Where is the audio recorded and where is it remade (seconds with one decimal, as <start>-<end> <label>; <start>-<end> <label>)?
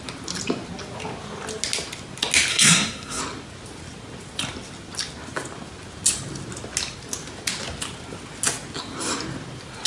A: 0.0-2.5 recorded; 2.5-3.2 remade; 3.2-9.9 recorded